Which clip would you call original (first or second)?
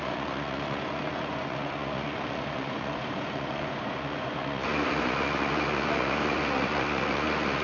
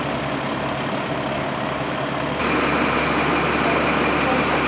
second